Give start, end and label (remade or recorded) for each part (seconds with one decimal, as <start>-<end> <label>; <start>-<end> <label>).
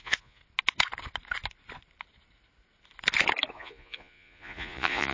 0.0-0.4 remade; 0.4-3.5 recorded; 3.5-5.1 remade